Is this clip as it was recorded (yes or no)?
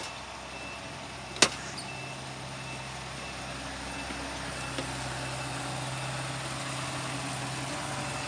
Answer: yes